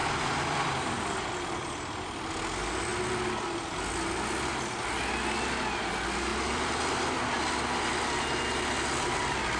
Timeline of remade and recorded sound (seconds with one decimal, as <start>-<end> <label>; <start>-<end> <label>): 0.0-1.3 remade; 1.3-6.3 recorded; 6.3-6.9 remade; 6.9-9.6 recorded